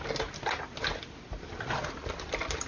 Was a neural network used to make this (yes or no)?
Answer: no